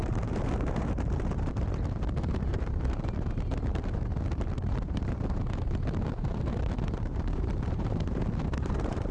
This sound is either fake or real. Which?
fake